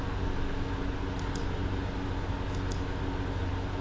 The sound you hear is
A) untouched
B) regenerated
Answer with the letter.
A